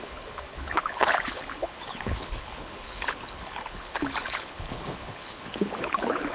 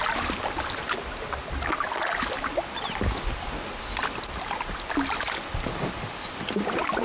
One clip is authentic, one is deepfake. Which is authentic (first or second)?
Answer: second